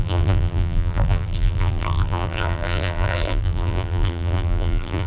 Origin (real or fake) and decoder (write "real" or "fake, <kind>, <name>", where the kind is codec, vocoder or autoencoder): fake, vocoder, BigVGAN v2